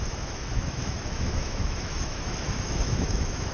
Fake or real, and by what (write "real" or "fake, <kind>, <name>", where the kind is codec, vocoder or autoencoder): fake, autoencoder, DAC-VAE